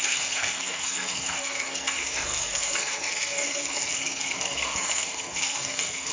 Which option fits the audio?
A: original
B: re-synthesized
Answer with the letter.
B